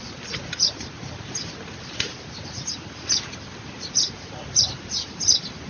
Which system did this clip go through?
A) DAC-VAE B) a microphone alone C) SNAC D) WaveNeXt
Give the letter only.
B